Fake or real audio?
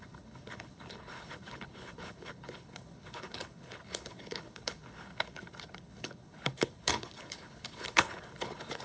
fake